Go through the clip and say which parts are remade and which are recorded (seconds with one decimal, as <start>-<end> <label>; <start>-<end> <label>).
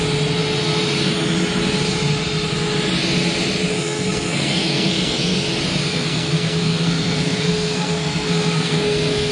0.0-3.8 recorded; 3.8-5.5 remade; 5.5-5.9 recorded; 5.9-9.3 remade